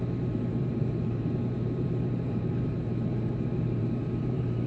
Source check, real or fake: fake